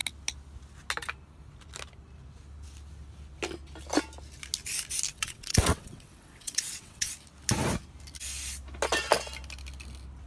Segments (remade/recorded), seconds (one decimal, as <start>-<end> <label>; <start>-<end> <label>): 0.0-5.1 recorded; 5.1-7.1 remade; 7.1-10.3 recorded